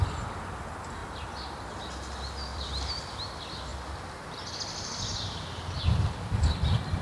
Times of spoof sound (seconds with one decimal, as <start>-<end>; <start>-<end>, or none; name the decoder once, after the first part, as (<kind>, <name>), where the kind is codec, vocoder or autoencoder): 1.0-1.7 (vocoder, BigVGAN v2); 2.5-3.1